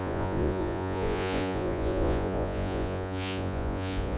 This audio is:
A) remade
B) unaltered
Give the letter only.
A